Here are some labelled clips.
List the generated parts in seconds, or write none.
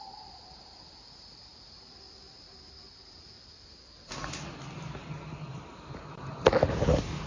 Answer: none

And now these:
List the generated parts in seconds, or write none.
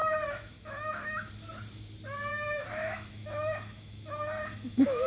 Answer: 0.0-1.3 (autoencoder, DAC-VAE); 2.3-5.1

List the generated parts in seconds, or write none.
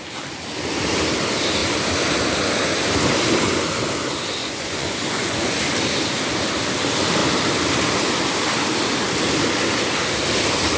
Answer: 4.4-5.6 (vocoder, Vocos)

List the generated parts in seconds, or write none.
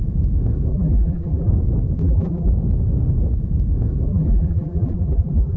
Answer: 0.7-1.5 (vocoder, BigVGAN v2); 2.0-2.5; 4.1-5.6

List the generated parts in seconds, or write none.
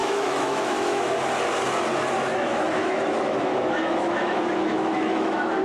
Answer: 0.0-1.1 (autoencoder, DAC-VAE); 2.3-5.6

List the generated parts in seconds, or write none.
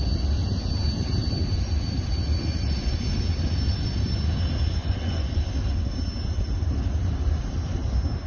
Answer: 4.8-5.4 (vocoder, Vocos)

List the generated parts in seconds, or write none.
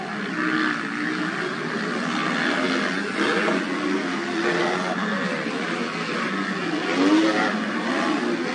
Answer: none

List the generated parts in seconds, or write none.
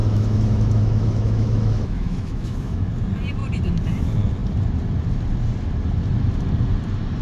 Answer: 0.0-2.9 (autoencoder, DAC-VAE)